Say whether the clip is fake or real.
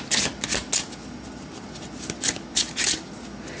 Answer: real